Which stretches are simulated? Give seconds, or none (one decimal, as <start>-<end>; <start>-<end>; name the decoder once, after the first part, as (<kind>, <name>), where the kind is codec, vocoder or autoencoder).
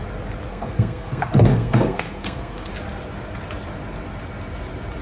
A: 0.5-2.7 (codec, SNAC)